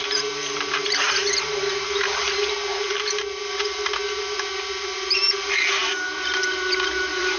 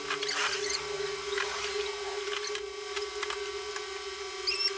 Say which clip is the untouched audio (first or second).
second